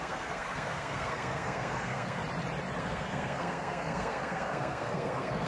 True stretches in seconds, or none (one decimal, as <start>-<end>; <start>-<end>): 2.2-2.8